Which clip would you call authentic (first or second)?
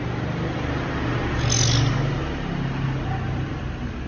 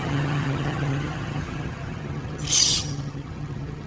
first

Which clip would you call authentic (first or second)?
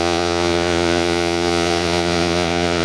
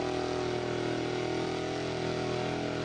second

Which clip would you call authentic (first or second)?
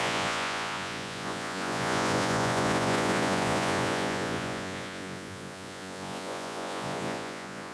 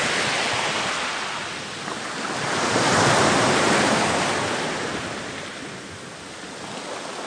second